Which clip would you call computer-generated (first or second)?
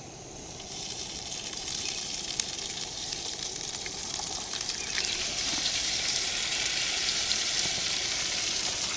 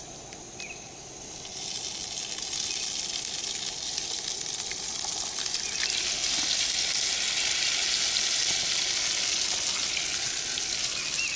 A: first